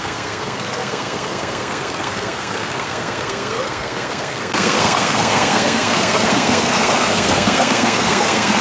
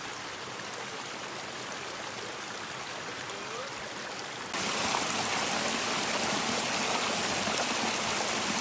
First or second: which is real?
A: second